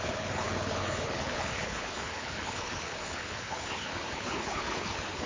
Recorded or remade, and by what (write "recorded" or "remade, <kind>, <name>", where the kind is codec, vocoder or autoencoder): remade, codec, HILCodec